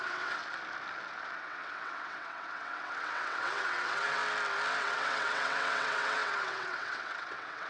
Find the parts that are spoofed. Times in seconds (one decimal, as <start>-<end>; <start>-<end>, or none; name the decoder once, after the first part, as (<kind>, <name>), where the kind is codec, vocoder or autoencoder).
0.0-0.4 (vocoder, WaveNeXt); 1.4-4.2; 4.8-7.7